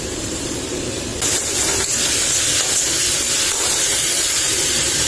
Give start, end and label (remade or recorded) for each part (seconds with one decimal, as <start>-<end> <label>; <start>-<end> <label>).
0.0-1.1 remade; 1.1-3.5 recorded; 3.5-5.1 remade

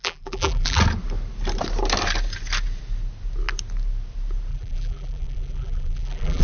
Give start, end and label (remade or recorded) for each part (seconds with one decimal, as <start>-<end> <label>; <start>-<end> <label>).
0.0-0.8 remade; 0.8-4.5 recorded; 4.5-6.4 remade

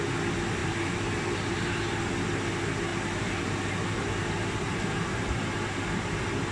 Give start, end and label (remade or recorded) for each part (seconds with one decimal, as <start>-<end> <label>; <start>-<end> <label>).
0.0-0.6 recorded; 0.6-2.0 remade; 2.0-2.9 recorded; 2.9-5.4 remade; 5.4-6.5 recorded

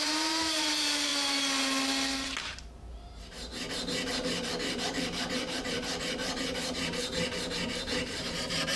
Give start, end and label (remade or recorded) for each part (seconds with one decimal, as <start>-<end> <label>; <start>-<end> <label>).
0.0-1.1 remade; 1.1-2.4 recorded; 2.4-3.5 remade; 3.5-4.9 recorded; 4.9-8.8 remade

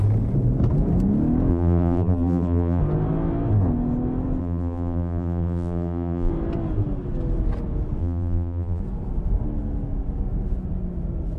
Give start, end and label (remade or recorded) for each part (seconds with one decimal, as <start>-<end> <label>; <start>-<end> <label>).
0.0-1.5 recorded; 1.5-2.8 remade; 2.8-4.4 recorded; 4.4-6.3 remade; 6.3-8.0 recorded; 8.0-8.8 remade; 8.8-11.4 recorded

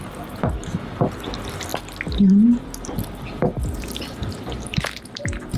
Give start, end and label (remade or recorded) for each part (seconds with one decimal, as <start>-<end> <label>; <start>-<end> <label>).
0.0-5.6 remade